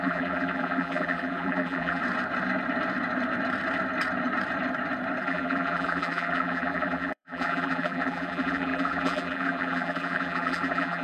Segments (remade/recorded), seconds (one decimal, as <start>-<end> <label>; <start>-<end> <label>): 0.0-2.0 remade; 2.0-5.2 recorded; 5.2-11.0 remade